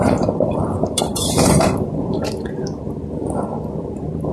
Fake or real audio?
fake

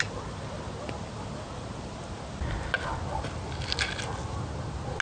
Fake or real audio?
real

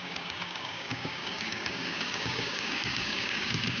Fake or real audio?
fake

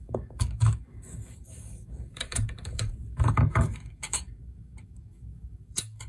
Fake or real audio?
fake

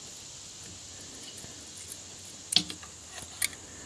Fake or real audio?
real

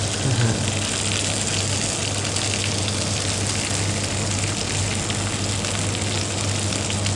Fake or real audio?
real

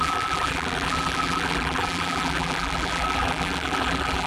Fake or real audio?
fake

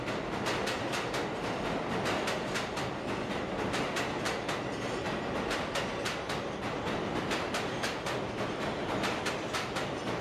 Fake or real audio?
real